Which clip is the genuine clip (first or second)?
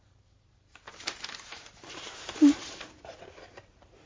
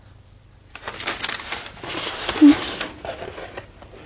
second